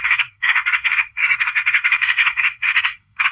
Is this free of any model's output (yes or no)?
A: no